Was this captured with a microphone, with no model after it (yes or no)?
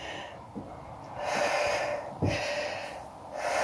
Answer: yes